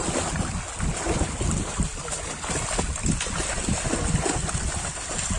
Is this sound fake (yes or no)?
no